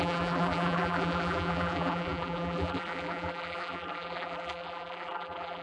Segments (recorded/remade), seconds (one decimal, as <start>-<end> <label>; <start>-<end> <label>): 0.0-5.6 remade